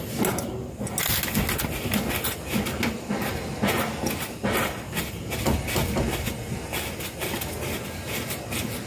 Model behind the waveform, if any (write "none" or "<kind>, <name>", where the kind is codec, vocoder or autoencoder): none